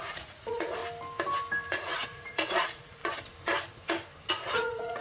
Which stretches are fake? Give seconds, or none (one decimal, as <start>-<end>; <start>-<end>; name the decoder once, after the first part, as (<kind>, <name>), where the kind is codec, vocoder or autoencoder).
0.0-0.8 (vocoder, Vocos); 1.7-3.0; 4.3-5.0